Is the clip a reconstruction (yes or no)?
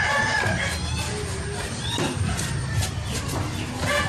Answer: no